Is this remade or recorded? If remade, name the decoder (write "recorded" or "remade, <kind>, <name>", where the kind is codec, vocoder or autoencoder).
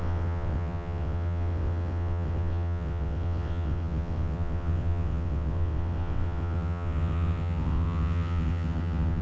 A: remade, vocoder, WaveNeXt